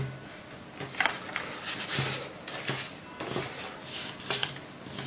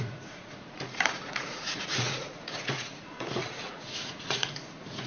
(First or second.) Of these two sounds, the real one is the first